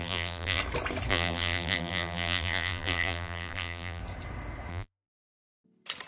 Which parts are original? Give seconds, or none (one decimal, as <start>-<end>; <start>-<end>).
0.6-1.1; 4.0-4.7; 5.4-6.1